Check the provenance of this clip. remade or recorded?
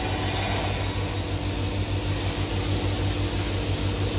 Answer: recorded